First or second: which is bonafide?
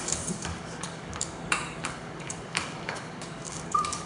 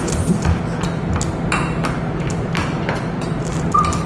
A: second